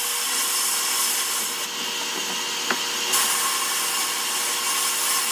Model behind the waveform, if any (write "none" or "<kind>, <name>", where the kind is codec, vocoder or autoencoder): none